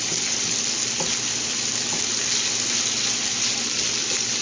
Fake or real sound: real